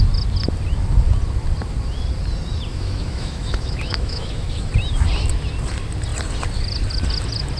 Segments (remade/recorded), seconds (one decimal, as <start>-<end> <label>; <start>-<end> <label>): 0.0-2.7 recorded; 2.7-4.7 remade; 4.7-7.6 recorded